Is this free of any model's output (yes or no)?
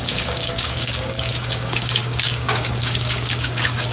no